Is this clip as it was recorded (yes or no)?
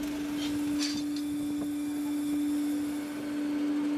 yes